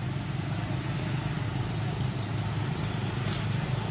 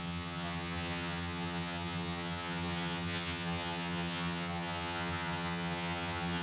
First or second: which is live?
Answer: first